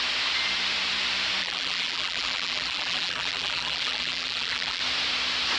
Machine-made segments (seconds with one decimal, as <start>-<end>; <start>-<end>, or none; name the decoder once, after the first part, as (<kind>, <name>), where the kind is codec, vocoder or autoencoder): 1.4-4.8 (vocoder, BigVGAN v2)

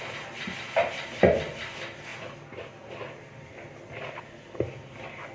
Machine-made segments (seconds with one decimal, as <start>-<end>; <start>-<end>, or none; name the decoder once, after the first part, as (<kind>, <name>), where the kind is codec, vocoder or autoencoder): none

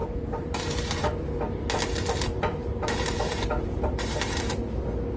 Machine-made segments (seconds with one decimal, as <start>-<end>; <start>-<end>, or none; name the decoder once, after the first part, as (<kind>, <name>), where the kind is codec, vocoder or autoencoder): 0.0-1.0 (vocoder, BigVGAN v2); 2.6-4.5

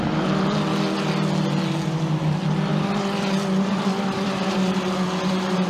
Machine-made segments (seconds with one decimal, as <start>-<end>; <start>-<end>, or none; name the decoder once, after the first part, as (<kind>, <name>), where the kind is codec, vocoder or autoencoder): none

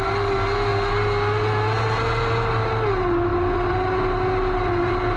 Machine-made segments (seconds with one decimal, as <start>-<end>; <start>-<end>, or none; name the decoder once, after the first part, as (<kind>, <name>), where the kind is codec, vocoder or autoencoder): none